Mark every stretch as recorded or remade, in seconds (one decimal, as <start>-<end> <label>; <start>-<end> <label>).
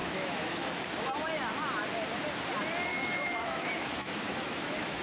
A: 0.0-0.8 remade; 0.8-2.9 recorded; 2.9-5.0 remade